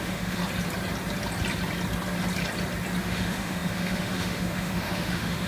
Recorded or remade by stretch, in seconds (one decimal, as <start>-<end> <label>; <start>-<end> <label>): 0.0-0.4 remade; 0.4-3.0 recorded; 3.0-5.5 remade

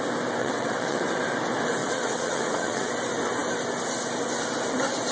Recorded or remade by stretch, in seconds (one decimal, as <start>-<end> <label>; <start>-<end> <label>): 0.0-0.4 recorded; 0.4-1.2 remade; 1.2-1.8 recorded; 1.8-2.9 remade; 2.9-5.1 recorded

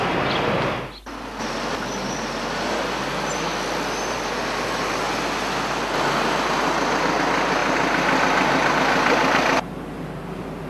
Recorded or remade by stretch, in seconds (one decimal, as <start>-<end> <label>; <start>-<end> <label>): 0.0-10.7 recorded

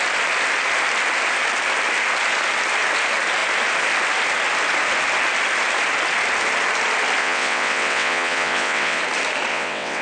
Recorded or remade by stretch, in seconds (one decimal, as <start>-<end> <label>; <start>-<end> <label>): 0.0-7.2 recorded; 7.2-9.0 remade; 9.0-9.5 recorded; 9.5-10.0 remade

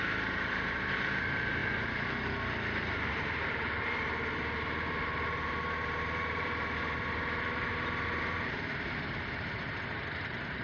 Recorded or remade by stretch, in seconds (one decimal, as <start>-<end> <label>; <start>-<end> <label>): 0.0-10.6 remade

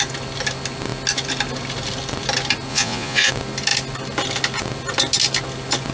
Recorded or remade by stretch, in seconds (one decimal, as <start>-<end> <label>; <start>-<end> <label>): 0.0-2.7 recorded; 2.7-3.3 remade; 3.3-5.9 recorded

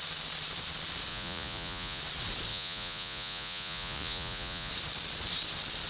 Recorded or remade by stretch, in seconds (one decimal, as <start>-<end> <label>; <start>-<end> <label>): 0.0-1.1 recorded; 1.1-2.0 remade; 2.0-2.5 recorded; 2.5-4.7 remade; 4.7-5.9 recorded